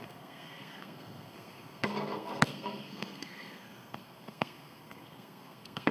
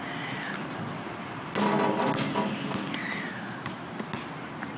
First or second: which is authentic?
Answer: second